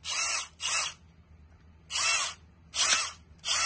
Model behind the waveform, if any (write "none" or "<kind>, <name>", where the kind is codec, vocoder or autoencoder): none